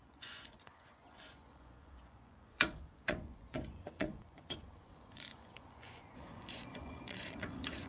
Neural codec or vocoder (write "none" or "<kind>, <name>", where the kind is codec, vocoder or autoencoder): vocoder, Vocos